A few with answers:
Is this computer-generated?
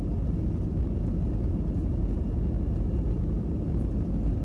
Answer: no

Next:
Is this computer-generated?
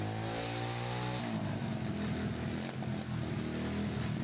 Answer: no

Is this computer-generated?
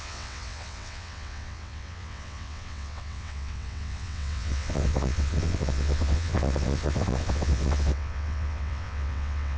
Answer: yes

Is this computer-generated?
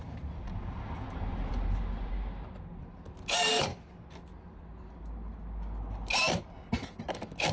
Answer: no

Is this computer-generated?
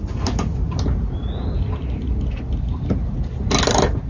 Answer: no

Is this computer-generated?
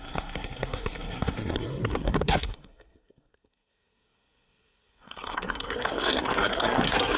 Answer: yes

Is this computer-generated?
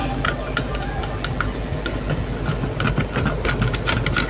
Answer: no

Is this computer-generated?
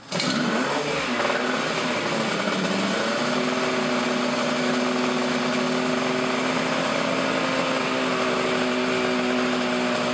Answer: no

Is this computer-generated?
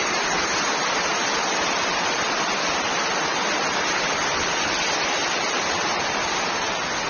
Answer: no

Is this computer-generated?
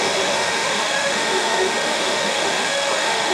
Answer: yes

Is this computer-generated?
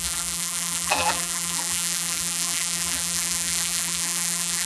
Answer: yes